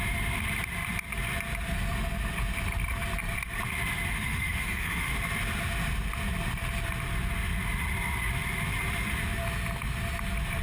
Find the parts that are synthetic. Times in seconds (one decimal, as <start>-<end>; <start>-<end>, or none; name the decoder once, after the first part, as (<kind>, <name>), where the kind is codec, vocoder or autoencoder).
4.1-5.1 (autoencoder, DAC-VAE)